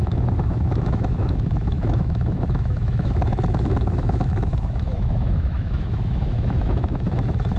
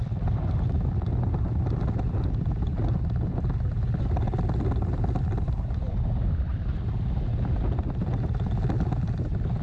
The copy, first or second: first